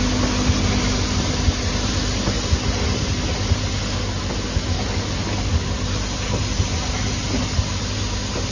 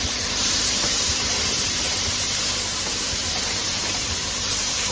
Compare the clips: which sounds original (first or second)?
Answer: first